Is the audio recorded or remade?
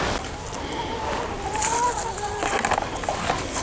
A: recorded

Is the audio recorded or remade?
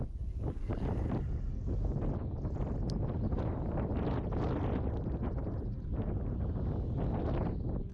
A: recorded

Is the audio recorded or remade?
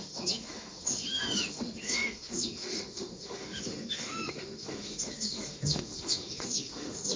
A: remade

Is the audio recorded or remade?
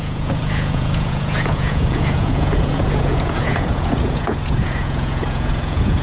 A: remade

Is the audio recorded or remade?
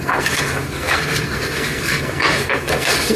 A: remade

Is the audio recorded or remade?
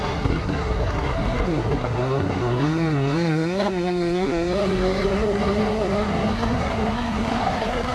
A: remade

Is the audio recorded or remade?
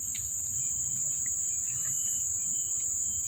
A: remade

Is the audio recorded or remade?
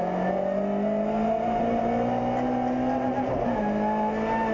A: recorded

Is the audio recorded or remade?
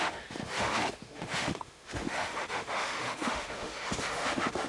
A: remade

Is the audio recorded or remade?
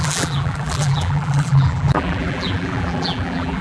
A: remade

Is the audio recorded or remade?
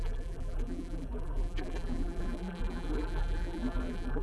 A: remade